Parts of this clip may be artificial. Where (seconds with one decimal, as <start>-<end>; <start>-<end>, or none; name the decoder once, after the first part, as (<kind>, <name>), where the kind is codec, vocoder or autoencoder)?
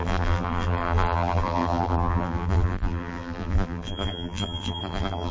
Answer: 0.0-5.3 (vocoder, BigVGAN v2)